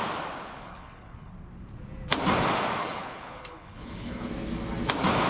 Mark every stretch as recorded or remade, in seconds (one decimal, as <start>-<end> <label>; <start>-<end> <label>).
0.0-0.6 recorded; 0.6-1.3 remade; 1.3-2.8 recorded; 2.8-4.3 remade; 4.3-5.3 recorded

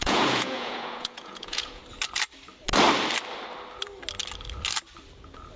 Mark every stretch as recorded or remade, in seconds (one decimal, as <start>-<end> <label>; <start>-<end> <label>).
0.0-1.8 remade; 1.8-5.6 recorded

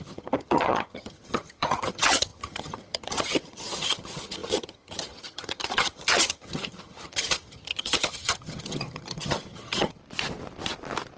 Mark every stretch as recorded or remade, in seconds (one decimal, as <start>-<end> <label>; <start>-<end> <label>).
0.0-10.0 remade; 10.0-11.2 recorded

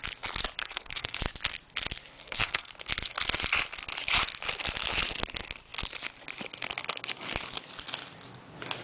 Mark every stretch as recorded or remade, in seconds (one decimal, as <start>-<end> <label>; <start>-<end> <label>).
0.0-0.6 recorded; 0.6-1.2 remade; 1.2-2.2 recorded; 2.2-2.7 remade; 2.7-8.8 recorded